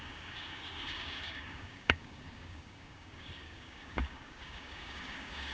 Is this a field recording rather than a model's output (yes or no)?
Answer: no